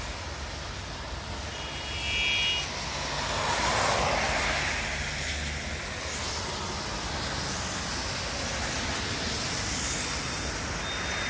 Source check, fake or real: real